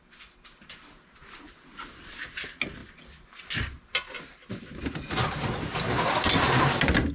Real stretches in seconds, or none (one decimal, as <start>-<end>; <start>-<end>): 0.0-7.1